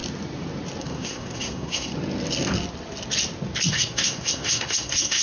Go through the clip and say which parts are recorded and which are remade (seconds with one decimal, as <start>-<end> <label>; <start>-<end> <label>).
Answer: 0.0-0.8 recorded; 0.8-1.9 remade; 1.9-3.7 recorded; 3.7-5.2 remade